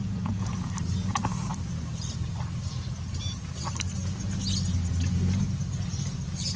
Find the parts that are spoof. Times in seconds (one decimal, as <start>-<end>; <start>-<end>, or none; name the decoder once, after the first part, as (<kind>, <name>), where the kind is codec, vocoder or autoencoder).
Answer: 0.0-0.7 (vocoder, Vocos)